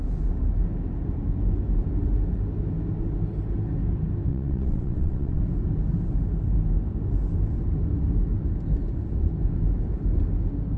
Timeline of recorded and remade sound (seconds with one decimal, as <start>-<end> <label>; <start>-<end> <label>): 0.0-4.3 recorded; 4.3-5.4 remade; 5.4-10.8 recorded